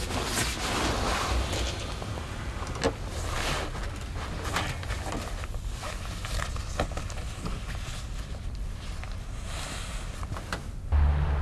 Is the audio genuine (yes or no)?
yes